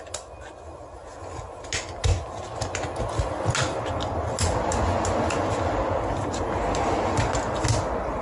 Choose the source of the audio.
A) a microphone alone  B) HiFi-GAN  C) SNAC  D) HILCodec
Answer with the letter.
A